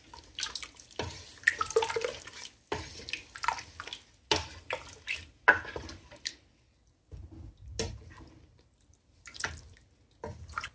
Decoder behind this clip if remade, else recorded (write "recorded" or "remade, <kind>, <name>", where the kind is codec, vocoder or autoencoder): recorded